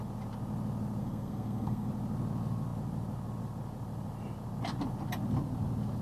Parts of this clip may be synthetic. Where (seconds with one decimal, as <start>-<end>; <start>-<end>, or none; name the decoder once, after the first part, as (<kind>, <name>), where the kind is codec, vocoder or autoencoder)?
1.0-1.9 (codec, SNAC)